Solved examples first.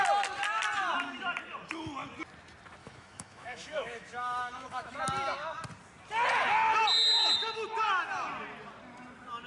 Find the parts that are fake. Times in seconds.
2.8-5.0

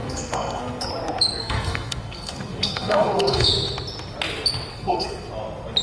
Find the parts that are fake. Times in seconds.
0.0-0.9; 1.4-3.5; 4.7-5.3

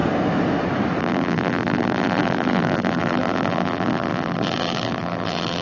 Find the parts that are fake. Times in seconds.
1.0-5.6

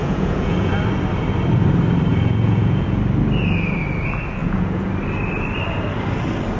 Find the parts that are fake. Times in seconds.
0.0-0.7; 2.1-3.0; 4.4-4.9

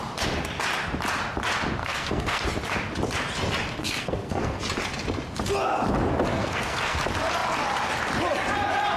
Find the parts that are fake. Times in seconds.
1.8-2.4; 3.8-4.6; 6.3-7.0

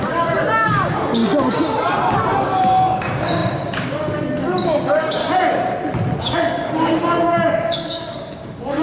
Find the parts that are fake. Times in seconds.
0.0-1.2; 2.4-5.2; 6.2-8.8

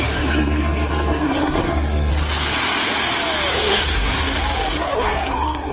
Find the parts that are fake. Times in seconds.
0.0-2.1; 3.5-4.1; 4.7-5.7

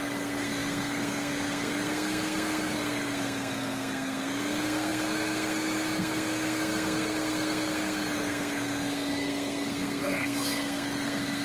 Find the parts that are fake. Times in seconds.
0.0-11.4